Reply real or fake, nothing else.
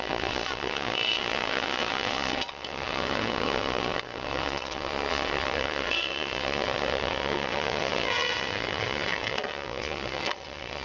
fake